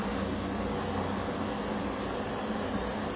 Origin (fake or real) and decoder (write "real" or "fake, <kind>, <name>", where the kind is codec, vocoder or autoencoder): real